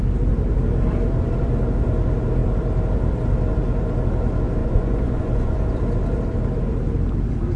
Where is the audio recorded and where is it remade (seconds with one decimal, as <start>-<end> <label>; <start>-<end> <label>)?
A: 0.0-4.6 recorded; 4.6-5.7 remade; 5.7-7.6 recorded